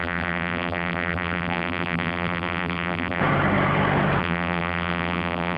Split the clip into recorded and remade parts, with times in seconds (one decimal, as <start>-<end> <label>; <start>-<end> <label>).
0.0-3.2 remade; 3.2-4.2 recorded; 4.2-5.6 remade